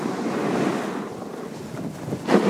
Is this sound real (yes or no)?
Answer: yes